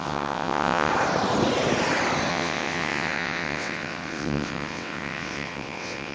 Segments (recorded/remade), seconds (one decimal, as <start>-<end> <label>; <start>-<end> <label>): 0.0-0.9 remade; 0.9-2.3 recorded; 2.3-6.1 remade